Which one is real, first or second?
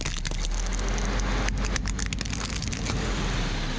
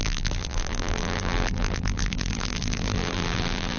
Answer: first